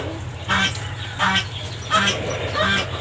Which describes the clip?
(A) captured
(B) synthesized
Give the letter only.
A